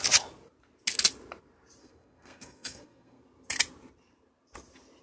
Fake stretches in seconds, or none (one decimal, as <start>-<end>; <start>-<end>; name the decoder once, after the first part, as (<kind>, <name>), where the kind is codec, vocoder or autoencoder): 1.8-3.2 (codec, SNAC)